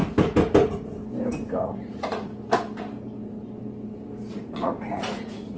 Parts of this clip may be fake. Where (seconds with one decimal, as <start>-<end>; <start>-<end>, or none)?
1.5-2.3; 4.3-5.6